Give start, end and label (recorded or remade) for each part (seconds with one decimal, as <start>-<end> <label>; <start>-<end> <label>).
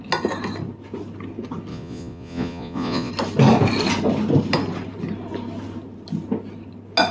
0.0-1.7 recorded; 1.7-3.1 remade; 3.1-7.1 recorded